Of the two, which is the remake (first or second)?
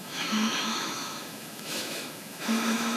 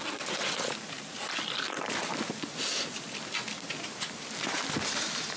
first